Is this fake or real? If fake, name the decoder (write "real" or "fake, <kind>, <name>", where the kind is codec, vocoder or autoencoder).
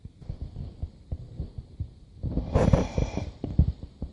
real